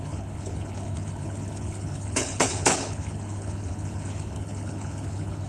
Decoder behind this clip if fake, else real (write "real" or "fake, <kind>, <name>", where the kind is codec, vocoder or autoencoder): fake, codec, HILCodec